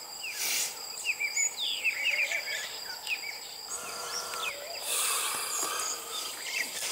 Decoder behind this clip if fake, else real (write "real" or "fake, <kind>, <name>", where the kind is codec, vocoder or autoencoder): fake, vocoder, BigVGAN v2